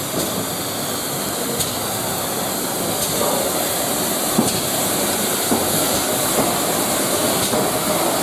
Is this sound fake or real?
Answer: real